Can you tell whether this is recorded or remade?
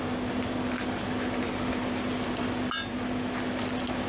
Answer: recorded